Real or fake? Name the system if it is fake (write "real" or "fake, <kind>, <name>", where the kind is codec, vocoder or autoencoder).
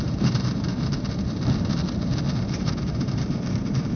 fake, vocoder, BigVGAN v2